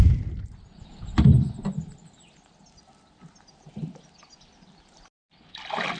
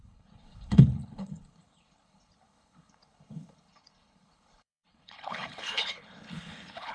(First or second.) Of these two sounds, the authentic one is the first